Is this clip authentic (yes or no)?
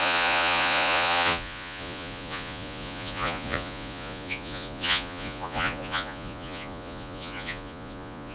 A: no